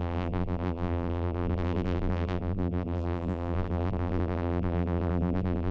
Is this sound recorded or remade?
remade